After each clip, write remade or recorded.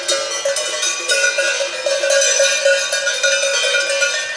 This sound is recorded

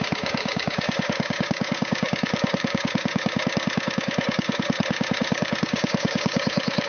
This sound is remade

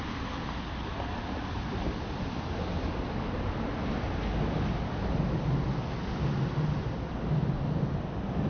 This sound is recorded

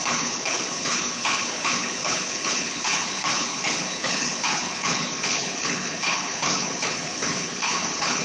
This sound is remade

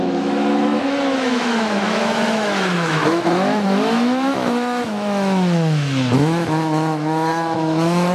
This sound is remade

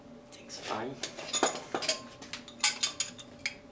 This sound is recorded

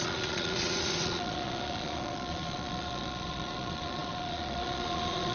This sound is remade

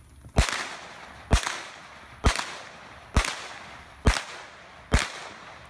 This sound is recorded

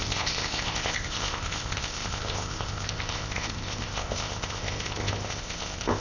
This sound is remade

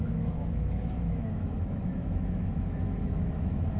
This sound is remade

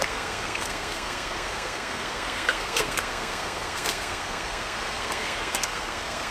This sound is remade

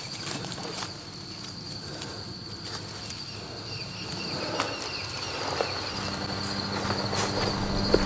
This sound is recorded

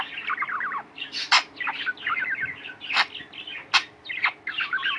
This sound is recorded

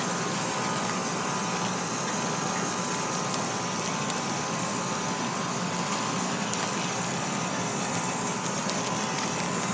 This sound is recorded